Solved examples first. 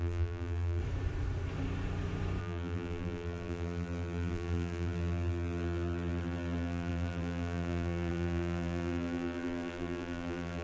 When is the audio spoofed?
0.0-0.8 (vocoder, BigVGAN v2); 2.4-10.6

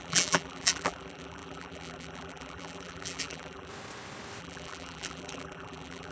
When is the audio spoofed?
0.0-3.7 (vocoder, BigVGAN v2); 4.4-6.1

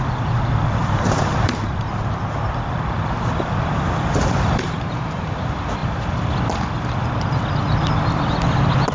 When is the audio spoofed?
0.8-4.9 (vocoder, BigVGAN v2)

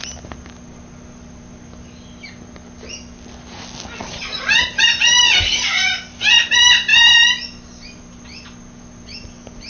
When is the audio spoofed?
4.0-6.3 (vocoder, BigVGAN v2)

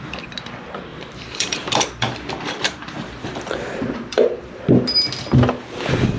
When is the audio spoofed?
0.9-4.6 (vocoder, BigVGAN v2)

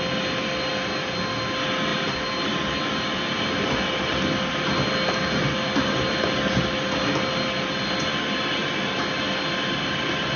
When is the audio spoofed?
1.9-2.5 (vocoder, BigVGAN v2)

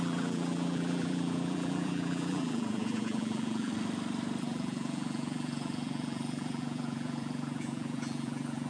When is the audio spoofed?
0.0-3.7 (vocoder, BigVGAN v2); 4.4-8.7

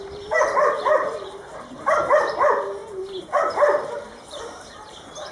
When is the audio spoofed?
0.0-2.8 (vocoder, BigVGAN v2); 3.5-5.3